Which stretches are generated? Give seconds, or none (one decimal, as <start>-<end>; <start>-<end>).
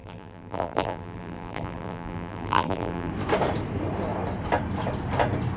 0.0-3.1